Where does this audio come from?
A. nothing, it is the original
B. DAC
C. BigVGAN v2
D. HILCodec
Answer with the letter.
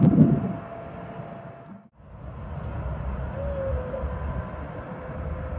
A